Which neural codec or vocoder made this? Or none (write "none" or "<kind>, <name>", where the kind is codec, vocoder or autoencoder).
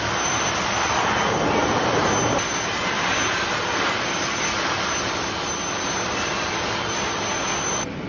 vocoder, BigVGAN v2